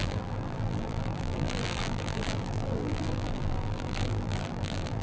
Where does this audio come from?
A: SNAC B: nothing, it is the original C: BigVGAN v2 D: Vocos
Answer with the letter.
C